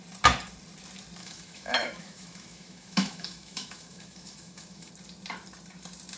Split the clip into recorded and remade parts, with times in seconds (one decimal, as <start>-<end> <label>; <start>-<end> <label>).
0.0-1.2 recorded; 1.2-4.9 remade; 4.9-6.2 recorded